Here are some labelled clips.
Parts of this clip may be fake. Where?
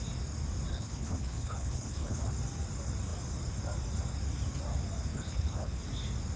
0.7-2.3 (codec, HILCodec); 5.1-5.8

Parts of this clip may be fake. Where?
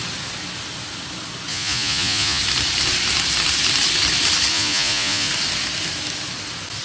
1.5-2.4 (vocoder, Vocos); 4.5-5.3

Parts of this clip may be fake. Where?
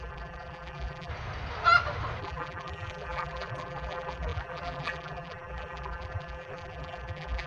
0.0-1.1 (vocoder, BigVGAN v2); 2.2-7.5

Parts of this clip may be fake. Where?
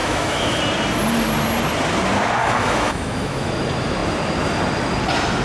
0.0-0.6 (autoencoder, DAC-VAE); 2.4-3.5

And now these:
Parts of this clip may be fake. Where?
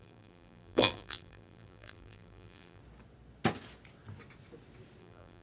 0.0-2.8 (vocoder, BigVGAN v2); 5.0-5.4